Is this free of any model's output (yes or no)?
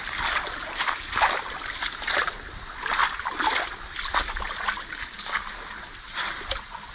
yes